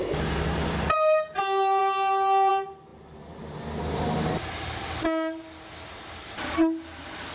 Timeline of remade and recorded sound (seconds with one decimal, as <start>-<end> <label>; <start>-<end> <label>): 0.0-7.3 recorded